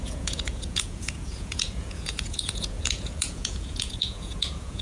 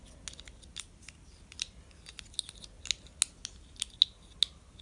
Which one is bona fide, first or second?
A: second